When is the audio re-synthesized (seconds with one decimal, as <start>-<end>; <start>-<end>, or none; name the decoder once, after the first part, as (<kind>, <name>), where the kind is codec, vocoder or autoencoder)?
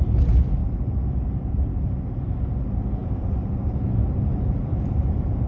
3.0-5.5 (vocoder, BigVGAN v2)